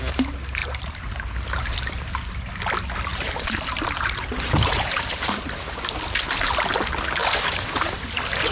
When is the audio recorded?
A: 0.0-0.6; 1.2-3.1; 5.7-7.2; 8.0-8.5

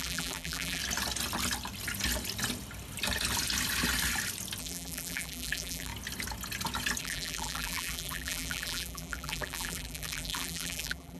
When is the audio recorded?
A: 0.8-4.6; 5.9-7.0

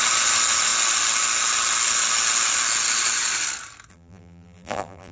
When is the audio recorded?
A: 0.0-3.9